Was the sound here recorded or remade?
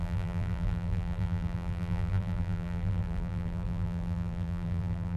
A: remade